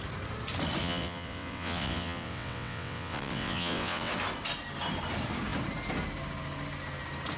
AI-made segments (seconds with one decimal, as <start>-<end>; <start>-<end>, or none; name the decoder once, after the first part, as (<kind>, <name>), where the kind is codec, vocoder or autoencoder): 0.8-4.1 (vocoder, WaveNeXt)